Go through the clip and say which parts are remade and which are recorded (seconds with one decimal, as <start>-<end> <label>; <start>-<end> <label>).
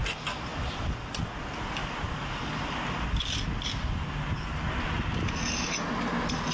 0.0-6.5 recorded